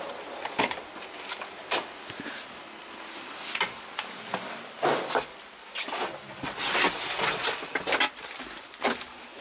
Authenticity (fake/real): real